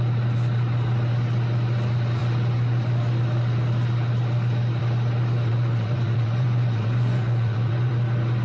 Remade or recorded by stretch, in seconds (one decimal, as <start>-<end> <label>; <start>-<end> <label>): 0.0-5.5 recorded; 5.5-7.9 remade; 7.9-8.4 recorded